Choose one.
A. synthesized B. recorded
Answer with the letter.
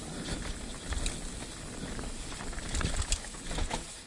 B